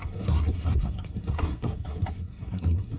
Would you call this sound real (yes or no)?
no